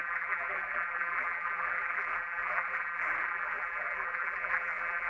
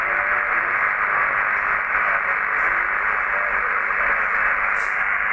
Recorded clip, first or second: second